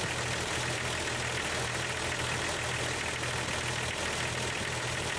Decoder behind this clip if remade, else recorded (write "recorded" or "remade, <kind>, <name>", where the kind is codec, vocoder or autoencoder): recorded